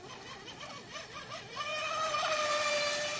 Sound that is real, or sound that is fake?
real